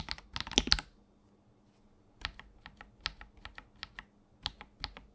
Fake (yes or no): no